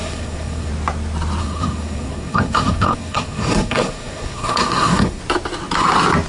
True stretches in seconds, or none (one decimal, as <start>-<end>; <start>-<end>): 0.7-1.4; 5.2-6.3